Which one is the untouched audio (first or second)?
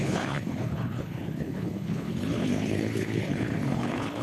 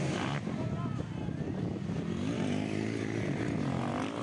second